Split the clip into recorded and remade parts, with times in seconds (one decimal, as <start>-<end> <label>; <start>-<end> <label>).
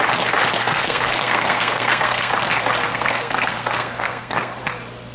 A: 0.0-0.6 recorded; 0.6-2.3 remade; 2.3-2.9 recorded; 2.9-4.6 remade; 4.6-5.1 recorded